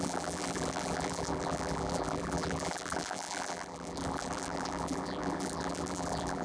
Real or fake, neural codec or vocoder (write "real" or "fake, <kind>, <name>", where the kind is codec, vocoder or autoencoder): fake, vocoder, BigVGAN v2